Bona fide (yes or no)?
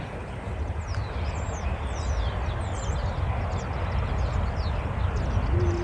yes